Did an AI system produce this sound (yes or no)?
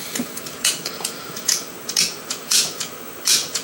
yes